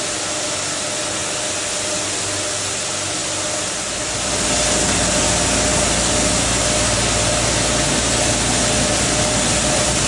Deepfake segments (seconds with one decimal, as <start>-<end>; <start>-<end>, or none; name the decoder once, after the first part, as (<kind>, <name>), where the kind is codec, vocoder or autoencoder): none

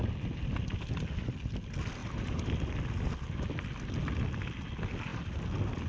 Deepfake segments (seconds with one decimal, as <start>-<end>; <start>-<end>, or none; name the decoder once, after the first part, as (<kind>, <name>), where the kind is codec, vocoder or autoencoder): 2.0-2.5 (vocoder, BigVGAN v2)

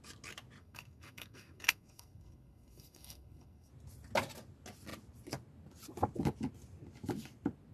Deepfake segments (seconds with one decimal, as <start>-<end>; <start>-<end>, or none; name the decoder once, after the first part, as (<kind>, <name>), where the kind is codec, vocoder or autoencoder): 0.6-3.7 (codec, SNAC)

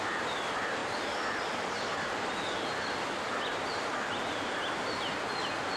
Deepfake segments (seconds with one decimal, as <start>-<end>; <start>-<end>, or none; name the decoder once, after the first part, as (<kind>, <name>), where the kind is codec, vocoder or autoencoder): 0.8-2.7 (vocoder, BigVGAN v2)

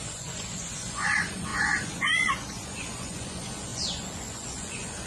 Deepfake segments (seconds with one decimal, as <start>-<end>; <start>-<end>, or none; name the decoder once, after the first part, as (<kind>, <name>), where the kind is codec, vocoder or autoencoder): 0.0-5.1 (vocoder, Vocos)

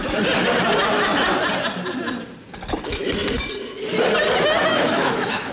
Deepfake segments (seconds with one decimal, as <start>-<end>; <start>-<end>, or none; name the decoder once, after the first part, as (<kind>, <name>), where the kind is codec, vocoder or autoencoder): 4.7-5.5 (autoencoder, DAC-VAE)